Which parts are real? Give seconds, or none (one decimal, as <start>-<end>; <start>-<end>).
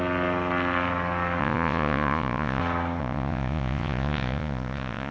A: 0.0-1.4; 2.6-3.0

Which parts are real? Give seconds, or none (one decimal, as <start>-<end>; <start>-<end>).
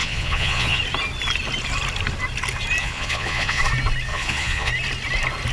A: 0.8-2.8; 3.6-4.1; 4.7-5.5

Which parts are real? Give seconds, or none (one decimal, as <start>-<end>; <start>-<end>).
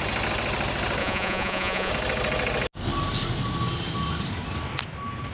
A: 0.0-1.0; 1.9-5.3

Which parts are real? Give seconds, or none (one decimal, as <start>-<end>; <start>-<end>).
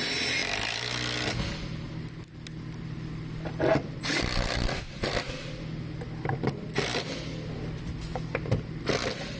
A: 0.0-9.4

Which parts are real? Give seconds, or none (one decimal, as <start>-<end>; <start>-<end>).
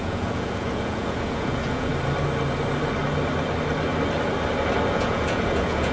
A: 1.9-4.9